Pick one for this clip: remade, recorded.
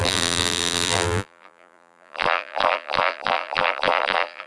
remade